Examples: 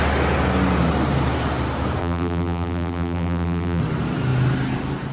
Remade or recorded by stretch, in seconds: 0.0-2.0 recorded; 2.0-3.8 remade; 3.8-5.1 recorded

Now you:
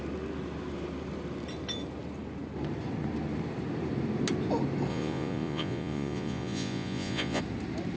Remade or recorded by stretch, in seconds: 0.0-4.9 recorded; 4.9-7.4 remade; 7.4-8.0 recorded

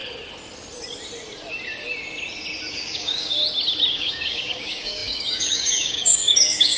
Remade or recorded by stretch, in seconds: 0.0-2.7 recorded; 2.7-3.4 remade; 3.4-3.9 recorded; 3.9-6.8 remade